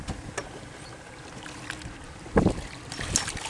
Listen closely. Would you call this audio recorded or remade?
recorded